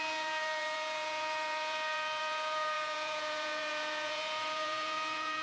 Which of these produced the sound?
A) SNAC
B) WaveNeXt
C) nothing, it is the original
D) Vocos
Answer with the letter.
D